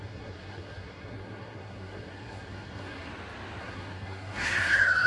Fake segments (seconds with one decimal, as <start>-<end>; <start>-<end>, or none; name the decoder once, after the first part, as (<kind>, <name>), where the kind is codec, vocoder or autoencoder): 0.0-3.1 (codec, SNAC); 3.6-5.1